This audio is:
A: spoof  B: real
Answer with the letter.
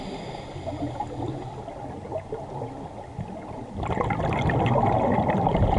B